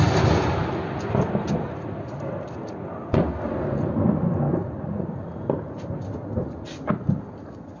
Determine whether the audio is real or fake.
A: real